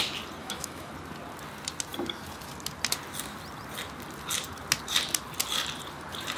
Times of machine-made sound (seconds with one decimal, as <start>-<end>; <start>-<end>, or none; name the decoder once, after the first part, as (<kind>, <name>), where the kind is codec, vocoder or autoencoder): 0.4-0.9 (autoencoder, DAC-VAE)